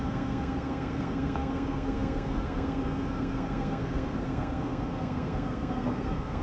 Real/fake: fake